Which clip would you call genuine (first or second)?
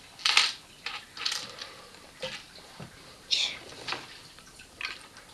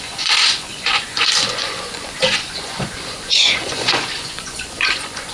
first